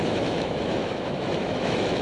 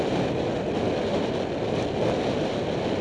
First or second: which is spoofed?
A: first